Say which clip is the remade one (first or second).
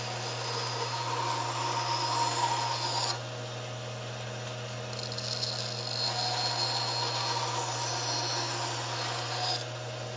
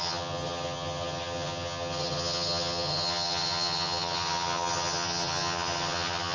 second